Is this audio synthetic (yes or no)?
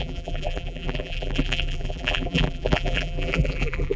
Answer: yes